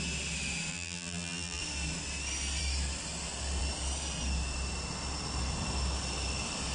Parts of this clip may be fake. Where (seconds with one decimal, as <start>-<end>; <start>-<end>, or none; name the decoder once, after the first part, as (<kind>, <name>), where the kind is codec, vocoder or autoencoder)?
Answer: 0.7-1.6 (vocoder, BigVGAN v2)